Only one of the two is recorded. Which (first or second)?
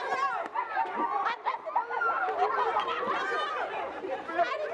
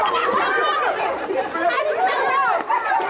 first